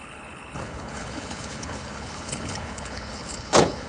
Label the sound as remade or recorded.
remade